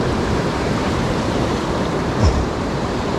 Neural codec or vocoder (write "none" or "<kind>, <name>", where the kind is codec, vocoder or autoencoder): vocoder, BigVGAN v2